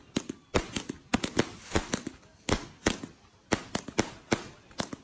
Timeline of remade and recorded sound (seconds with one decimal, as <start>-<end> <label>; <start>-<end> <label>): 0.0-5.0 recorded